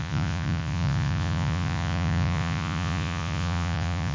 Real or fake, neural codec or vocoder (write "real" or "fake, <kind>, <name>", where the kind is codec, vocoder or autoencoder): fake, vocoder, Vocos